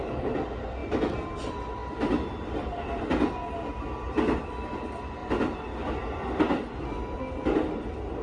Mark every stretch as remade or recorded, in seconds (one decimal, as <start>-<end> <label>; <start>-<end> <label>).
0.0-8.2 recorded